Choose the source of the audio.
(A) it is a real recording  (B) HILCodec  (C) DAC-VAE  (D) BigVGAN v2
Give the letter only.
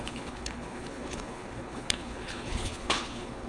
B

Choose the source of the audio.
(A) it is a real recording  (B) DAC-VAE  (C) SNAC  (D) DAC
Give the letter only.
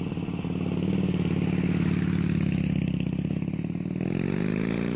A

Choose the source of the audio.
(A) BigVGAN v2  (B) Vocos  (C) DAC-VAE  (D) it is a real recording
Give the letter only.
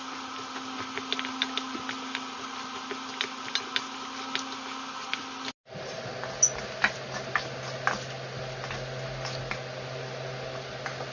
D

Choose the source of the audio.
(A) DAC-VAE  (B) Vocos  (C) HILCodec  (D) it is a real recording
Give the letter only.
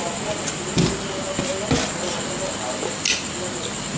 D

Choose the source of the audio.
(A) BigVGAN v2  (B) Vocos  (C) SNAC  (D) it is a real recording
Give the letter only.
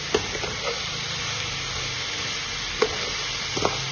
D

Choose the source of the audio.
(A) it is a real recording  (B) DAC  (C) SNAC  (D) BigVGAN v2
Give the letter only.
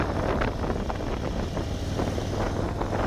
A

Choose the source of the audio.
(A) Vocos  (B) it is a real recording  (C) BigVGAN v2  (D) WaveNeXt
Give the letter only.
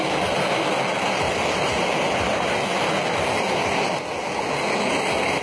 B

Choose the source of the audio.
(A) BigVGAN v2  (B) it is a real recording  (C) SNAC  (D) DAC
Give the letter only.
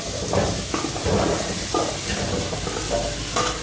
B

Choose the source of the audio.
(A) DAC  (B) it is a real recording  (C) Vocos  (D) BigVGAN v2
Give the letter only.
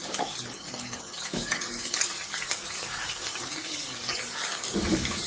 A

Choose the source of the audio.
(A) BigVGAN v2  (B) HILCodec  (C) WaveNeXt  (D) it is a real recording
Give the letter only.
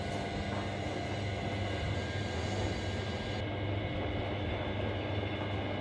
D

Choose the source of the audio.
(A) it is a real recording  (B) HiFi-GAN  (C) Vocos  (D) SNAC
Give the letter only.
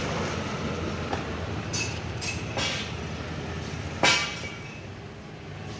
A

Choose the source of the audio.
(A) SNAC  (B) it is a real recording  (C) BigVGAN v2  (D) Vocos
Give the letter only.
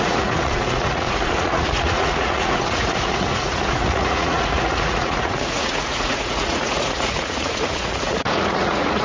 D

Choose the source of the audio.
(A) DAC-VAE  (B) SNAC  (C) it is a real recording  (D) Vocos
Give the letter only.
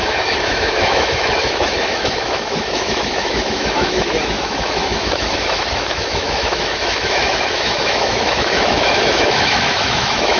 A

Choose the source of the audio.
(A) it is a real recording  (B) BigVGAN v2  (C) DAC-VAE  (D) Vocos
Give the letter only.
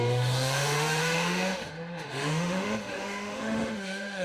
C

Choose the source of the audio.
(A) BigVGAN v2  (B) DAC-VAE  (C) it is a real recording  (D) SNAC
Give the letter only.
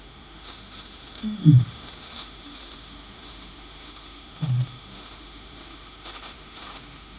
B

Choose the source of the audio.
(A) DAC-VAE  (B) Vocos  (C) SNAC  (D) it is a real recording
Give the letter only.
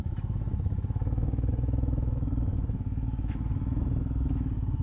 A